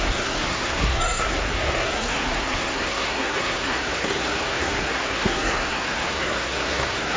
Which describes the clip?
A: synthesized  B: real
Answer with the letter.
A